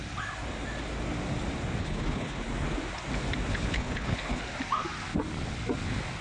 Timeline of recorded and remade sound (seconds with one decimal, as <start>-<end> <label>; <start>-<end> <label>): 0.0-1.8 recorded; 1.8-2.4 remade; 2.4-3.5 recorded; 3.5-4.4 remade; 4.4-6.2 recorded